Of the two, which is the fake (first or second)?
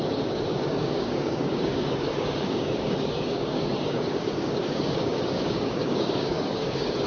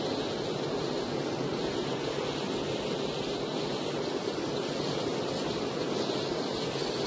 first